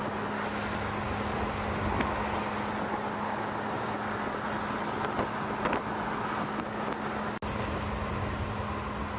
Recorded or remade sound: recorded